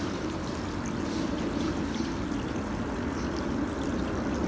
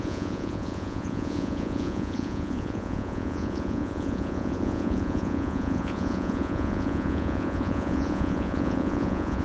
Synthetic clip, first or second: second